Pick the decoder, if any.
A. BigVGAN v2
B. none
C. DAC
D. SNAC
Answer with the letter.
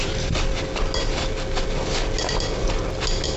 B